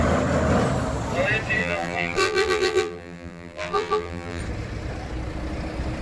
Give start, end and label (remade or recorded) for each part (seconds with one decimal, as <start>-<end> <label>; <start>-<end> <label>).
0.0-1.6 recorded; 1.6-4.4 remade; 4.4-6.0 recorded